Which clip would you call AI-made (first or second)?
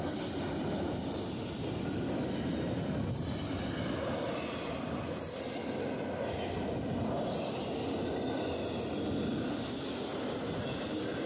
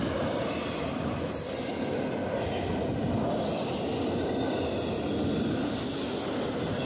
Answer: second